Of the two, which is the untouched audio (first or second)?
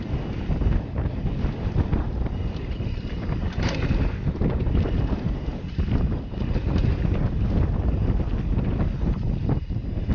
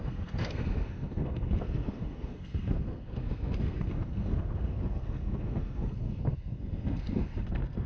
first